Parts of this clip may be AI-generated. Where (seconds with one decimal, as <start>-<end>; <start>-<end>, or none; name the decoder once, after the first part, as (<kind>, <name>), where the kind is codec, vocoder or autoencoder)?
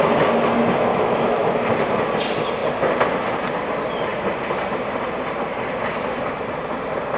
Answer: 0.9-1.7 (autoencoder, DAC-VAE)